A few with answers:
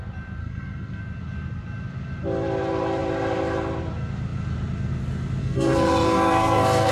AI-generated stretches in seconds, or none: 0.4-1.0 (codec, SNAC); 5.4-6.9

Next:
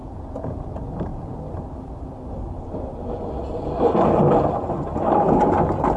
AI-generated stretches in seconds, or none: 0.0-0.7 (vocoder, Vocos)

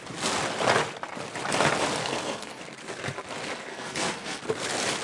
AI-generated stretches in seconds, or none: 2.0-2.6 (codec, SNAC); 3.7-4.4

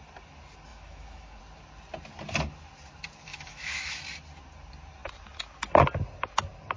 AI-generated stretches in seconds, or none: 0.7-1.4 (autoencoder, DAC-VAE); 3.3-4.0

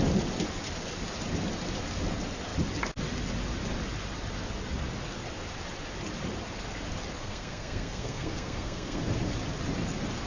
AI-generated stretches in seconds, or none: 7.2-9.0 (codec, SNAC)

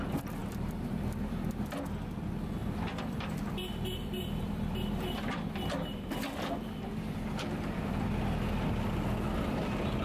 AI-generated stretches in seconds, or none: 2.6-7.8 (vocoder, BigVGAN v2)

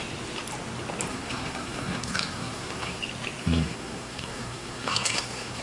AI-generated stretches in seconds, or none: 1.1-3.0 (codec, SNAC); 3.4-5.6

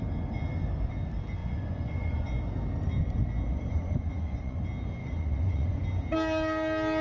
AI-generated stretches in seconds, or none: 1.4-2.4 (vocoder, Vocos); 3.5-4.6; 5.0-5.8